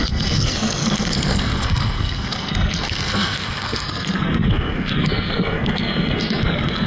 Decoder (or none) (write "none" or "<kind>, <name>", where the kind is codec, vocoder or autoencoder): codec, SNAC